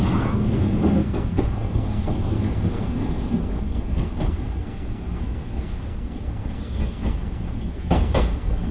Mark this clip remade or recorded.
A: remade